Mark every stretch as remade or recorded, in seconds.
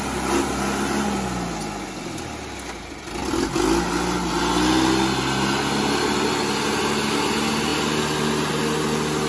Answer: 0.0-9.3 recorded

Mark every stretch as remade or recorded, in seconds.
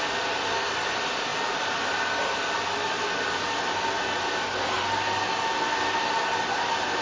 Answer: 0.0-7.0 recorded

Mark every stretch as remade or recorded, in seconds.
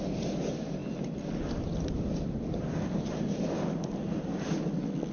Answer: 0.0-5.1 recorded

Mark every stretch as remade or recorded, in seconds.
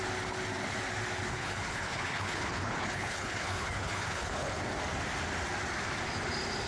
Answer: 0.0-1.3 recorded; 1.3-4.6 remade; 4.6-6.7 recorded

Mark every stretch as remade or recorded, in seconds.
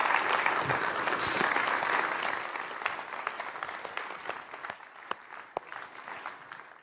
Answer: 0.0-6.8 recorded